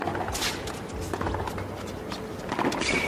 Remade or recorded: recorded